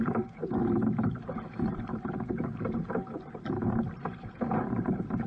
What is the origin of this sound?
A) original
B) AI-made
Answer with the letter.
B